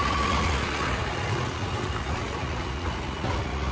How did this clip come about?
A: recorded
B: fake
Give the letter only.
B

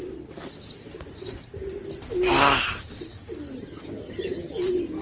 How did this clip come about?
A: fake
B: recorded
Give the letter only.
B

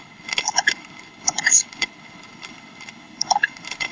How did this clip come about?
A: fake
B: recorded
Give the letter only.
A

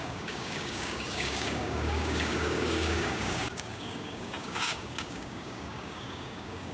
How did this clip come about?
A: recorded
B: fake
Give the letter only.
B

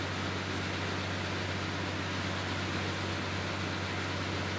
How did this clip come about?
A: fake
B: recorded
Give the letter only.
B